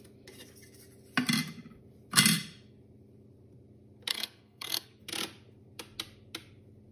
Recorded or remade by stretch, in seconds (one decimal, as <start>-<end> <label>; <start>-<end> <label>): 0.0-4.1 recorded; 4.1-5.0 remade; 5.0-6.9 recorded